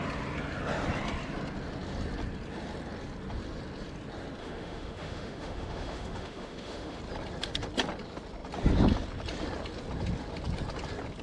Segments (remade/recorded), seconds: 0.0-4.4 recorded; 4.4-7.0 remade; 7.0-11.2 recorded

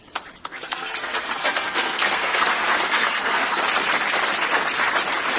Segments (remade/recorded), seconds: 0.0-0.4 recorded; 0.4-3.6 remade; 3.6-5.4 recorded

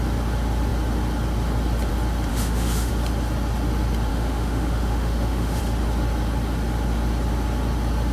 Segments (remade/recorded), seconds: 0.0-2.3 recorded; 2.3-2.9 remade; 2.9-4.1 recorded; 4.1-5.6 remade; 5.6-8.1 recorded

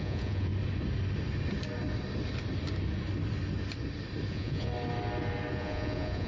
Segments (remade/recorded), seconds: 0.0-0.5 remade; 0.5-4.3 recorded; 4.3-4.7 remade; 4.7-5.5 recorded; 5.5-6.3 remade

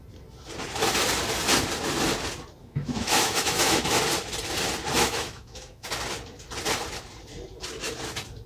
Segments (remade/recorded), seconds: 0.0-2.6 recorded; 2.6-4.0 remade; 4.0-5.0 recorded; 5.0-5.9 remade; 5.9-8.5 recorded

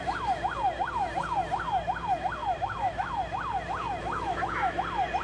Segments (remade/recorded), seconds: 0.0-2.4 recorded; 2.4-3.1 remade; 3.1-4.0 recorded; 4.0-4.8 remade; 4.8-5.2 recorded

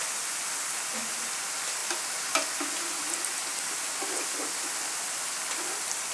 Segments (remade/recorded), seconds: 0.0-6.1 recorded